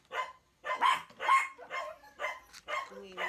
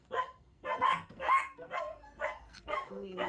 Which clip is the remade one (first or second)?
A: second